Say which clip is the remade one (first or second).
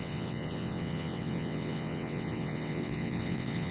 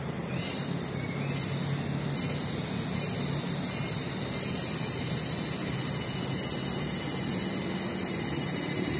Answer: first